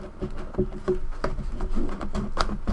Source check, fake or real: real